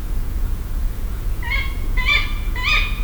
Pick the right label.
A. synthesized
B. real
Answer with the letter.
A